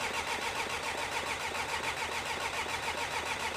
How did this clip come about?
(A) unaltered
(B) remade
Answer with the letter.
A